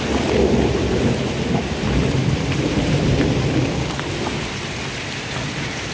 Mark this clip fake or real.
real